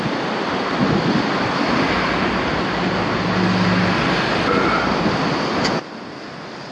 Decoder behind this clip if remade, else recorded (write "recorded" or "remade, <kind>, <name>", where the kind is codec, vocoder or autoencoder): recorded